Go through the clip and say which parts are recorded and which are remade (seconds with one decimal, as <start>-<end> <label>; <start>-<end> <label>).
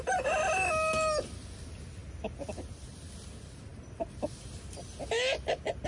0.0-5.9 recorded